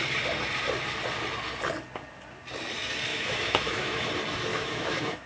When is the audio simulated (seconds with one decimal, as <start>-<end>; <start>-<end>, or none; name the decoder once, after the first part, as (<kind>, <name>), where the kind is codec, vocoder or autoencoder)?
3.1-4.1 (autoencoder, DAC-VAE); 4.5-5.3